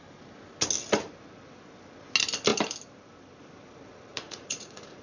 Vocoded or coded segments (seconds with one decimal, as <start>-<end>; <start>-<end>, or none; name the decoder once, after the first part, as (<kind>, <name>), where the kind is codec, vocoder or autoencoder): 4.1-5.0 (vocoder, Vocos)